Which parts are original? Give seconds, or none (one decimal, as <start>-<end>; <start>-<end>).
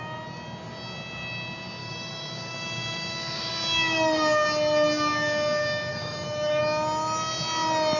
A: 0.0-1.8; 3.5-5.9; 6.6-8.0